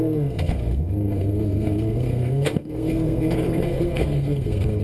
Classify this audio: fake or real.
fake